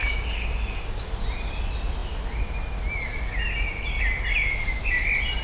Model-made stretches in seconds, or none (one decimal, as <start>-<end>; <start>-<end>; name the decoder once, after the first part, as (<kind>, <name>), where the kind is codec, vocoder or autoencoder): 0.0-1.1 (codec, DAC)